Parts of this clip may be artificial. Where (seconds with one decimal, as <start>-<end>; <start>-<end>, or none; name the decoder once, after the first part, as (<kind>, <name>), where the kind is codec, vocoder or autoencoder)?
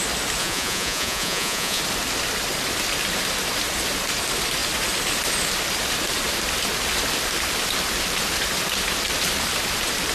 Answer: 0.4-1.8 (vocoder, Vocos)